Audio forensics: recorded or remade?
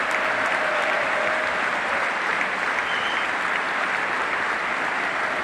recorded